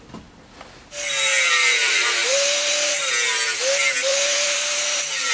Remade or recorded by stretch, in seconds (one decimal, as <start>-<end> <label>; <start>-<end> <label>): 0.0-1.3 recorded; 1.3-3.1 remade; 3.1-4.1 recorded; 4.1-5.3 remade